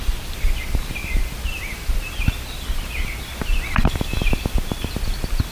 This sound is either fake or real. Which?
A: real